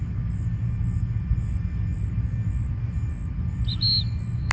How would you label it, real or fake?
real